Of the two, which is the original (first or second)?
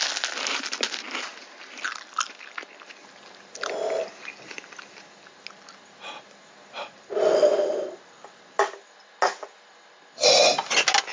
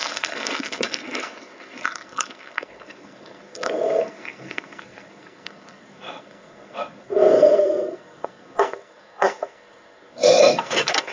first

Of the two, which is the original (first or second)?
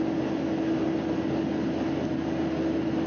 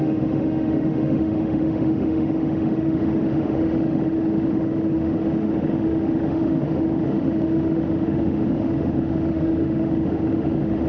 first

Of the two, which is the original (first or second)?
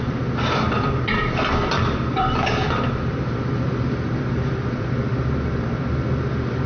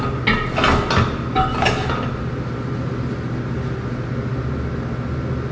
second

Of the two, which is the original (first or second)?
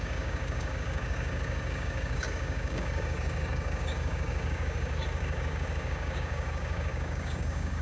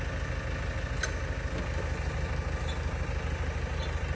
second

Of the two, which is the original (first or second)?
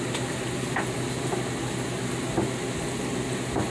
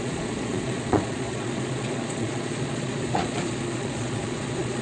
first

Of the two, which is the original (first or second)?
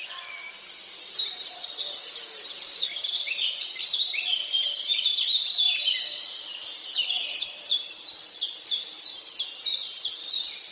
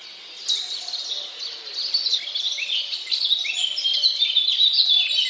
second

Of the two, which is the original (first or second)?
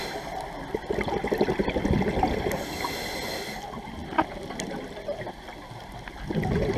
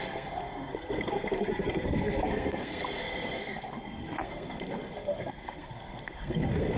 first